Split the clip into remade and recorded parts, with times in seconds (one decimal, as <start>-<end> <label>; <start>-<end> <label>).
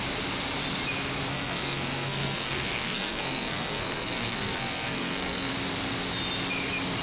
0.0-1.3 recorded; 1.3-5.5 remade; 5.5-7.0 recorded